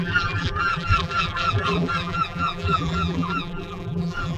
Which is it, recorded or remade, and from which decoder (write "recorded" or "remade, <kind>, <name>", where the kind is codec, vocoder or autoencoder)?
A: remade, vocoder, BigVGAN v2